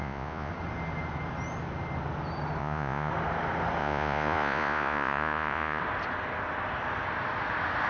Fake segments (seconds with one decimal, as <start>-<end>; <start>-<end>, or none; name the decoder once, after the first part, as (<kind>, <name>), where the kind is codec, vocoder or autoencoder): 0.0-0.5 (vocoder, Vocos); 2.6-3.1; 3.8-5.8